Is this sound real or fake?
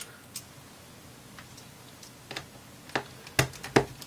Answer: real